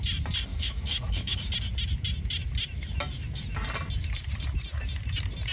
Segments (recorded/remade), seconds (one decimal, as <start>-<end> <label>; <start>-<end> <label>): 0.0-0.5 recorded; 0.5-1.4 remade; 1.4-5.5 recorded